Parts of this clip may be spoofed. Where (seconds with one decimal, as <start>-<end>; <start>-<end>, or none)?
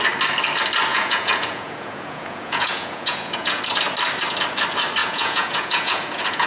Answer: 0.9-3.6; 5.0-6.5